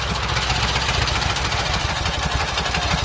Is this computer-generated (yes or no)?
no